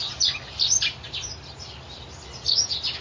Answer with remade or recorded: recorded